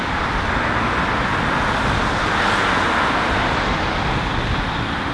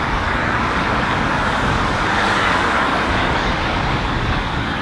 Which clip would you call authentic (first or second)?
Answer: first